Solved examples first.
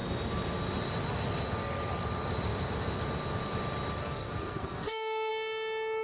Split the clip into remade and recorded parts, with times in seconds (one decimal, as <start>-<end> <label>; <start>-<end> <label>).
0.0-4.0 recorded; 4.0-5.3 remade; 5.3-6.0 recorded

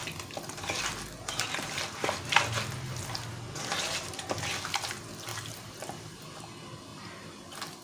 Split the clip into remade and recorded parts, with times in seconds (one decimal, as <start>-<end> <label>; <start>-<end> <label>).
0.0-5.3 recorded; 5.3-6.2 remade; 6.2-6.9 recorded; 6.9-7.8 remade

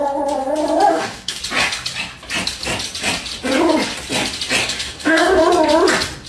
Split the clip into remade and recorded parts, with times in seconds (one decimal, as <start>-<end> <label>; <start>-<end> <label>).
0.0-0.9 recorded; 0.9-1.4 remade; 1.4-4.6 recorded; 4.6-5.4 remade; 5.4-6.3 recorded

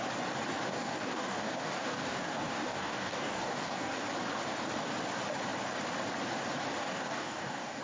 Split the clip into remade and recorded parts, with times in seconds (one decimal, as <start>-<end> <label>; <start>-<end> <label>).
0.0-0.7 recorded; 0.7-4.0 remade; 4.0-6.8 recorded; 6.8-7.8 remade